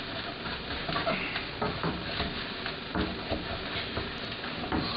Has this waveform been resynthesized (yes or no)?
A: no